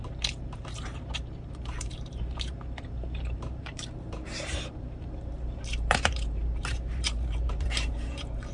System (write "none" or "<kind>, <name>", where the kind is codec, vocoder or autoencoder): vocoder, BigVGAN v2